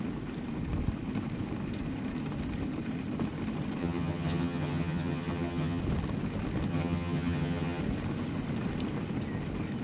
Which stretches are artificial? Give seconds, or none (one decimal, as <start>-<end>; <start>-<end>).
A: 3.8-5.8; 6.7-7.8